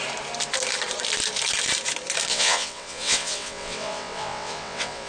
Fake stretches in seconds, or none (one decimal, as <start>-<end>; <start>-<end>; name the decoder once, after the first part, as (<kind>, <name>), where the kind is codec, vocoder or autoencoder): 2.3-5.1 (vocoder, WaveNeXt)